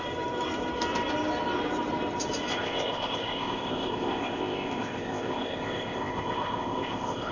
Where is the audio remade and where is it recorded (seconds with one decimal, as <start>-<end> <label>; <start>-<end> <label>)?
0.0-2.5 recorded; 2.5-7.3 remade